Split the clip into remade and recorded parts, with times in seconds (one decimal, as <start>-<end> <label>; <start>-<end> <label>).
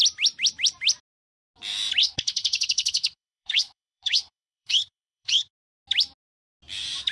0.0-2.0 recorded; 2.0-5.5 remade; 5.5-7.1 recorded